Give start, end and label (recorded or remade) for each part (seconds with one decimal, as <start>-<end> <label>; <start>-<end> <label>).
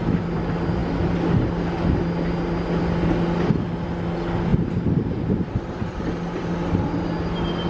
0.0-4.5 recorded; 4.5-5.1 remade; 5.1-7.7 recorded